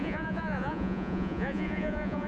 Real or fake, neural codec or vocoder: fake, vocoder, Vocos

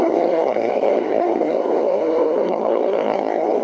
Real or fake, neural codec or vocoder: fake, codec, SNAC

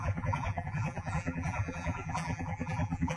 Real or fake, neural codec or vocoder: fake, vocoder, BigVGAN v2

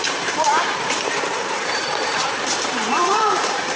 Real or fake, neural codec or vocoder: fake, vocoder, BigVGAN v2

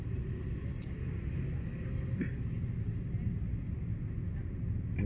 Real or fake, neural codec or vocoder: real